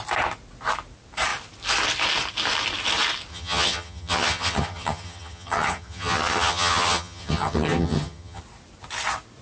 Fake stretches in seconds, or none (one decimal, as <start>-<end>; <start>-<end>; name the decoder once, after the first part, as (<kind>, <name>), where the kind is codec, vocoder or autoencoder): 3.3-8.4 (vocoder, HiFi-GAN)